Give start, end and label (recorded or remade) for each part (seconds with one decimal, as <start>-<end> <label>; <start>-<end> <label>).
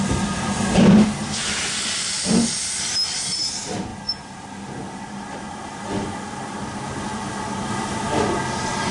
0.0-8.9 recorded